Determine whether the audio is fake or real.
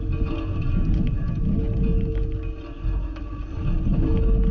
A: real